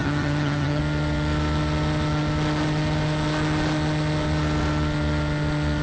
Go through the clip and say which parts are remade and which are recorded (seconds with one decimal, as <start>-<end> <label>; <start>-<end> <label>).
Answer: 0.0-0.8 remade; 0.8-5.8 recorded